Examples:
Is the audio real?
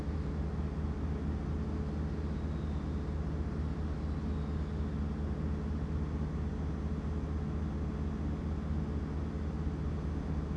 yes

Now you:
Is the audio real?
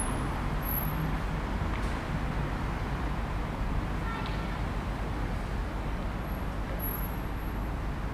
yes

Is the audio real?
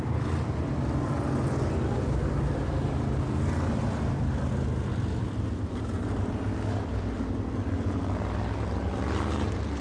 no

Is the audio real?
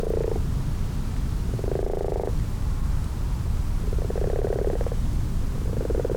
yes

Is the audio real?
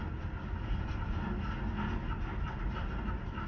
yes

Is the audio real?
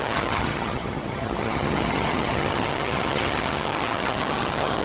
no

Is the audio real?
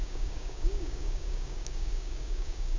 no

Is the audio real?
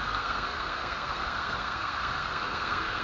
no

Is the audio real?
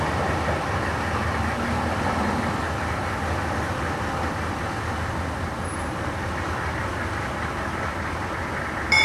yes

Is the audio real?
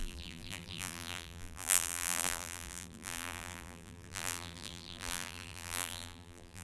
no